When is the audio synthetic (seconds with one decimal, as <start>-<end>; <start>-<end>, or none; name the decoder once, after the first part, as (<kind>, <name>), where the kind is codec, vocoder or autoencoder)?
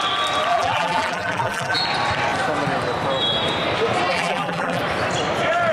0.5-1.8 (vocoder, BigVGAN v2); 4.1-4.8